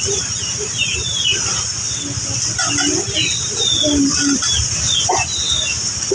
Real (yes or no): yes